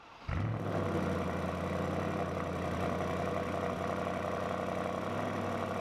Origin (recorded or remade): recorded